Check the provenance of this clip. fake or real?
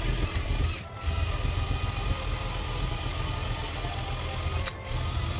real